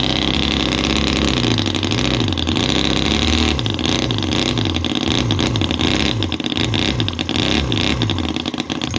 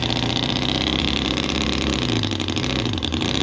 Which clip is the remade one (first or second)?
second